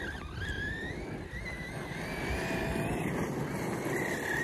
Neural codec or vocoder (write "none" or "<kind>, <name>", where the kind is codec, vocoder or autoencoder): none